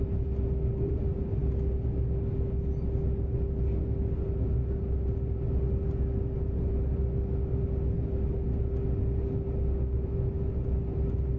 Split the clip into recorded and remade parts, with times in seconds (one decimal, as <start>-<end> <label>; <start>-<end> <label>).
0.0-11.4 recorded

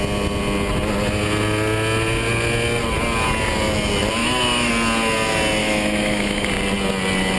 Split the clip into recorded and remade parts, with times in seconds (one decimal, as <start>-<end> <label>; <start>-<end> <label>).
0.0-4.2 recorded; 4.2-4.7 remade; 4.7-5.6 recorded; 5.6-6.5 remade; 6.5-7.4 recorded

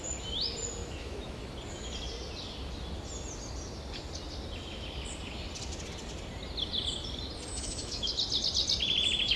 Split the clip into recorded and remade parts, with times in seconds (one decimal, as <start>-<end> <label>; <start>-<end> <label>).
0.0-0.8 recorded; 0.8-1.4 remade; 1.4-7.5 recorded; 7.5-8.1 remade; 8.1-9.4 recorded

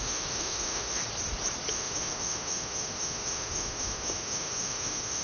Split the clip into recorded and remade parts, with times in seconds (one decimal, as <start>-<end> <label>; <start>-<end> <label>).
0.0-1.0 remade; 1.0-1.7 recorded; 1.7-5.2 remade